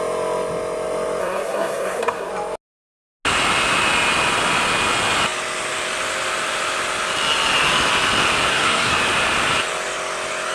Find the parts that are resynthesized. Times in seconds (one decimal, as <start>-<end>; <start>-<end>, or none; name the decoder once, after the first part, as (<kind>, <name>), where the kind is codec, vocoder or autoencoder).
1.2-2.3 (codec, SNAC); 8.5-9.0